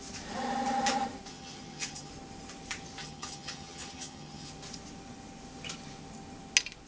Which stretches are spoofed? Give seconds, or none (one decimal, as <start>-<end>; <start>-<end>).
1.3-2.1; 3.0-4.5